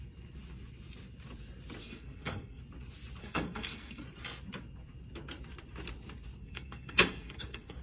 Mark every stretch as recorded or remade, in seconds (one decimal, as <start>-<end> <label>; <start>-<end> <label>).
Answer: 0.0-1.8 recorded; 1.8-2.6 remade; 2.6-3.2 recorded; 3.2-4.0 remade; 4.0-6.4 recorded; 6.4-7.8 remade